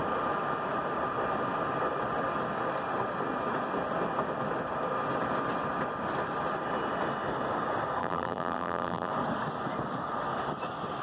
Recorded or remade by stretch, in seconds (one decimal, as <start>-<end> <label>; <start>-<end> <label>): 0.0-8.0 recorded; 8.0-9.1 remade; 9.1-11.0 recorded